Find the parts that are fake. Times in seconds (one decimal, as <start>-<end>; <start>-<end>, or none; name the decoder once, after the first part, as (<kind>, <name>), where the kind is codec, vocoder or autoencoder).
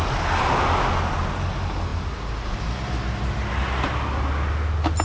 none